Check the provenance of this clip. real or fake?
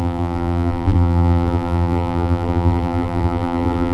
fake